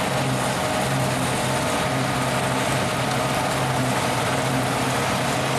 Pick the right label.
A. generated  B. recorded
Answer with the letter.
B